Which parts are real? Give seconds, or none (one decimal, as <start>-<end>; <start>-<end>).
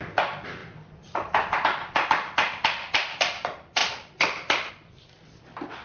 0.0-5.8